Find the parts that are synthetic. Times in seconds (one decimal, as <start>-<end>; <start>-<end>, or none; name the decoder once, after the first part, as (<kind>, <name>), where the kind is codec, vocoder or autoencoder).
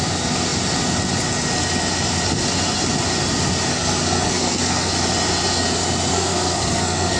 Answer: 3.7-4.9 (codec, SNAC); 6.1-7.2